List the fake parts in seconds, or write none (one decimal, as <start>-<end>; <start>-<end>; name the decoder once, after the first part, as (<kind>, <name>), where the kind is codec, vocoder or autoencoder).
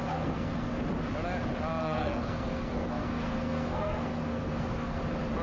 0.0-0.7 (codec, SNAC); 1.8-5.0